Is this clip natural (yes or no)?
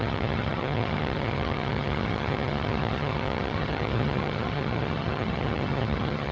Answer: no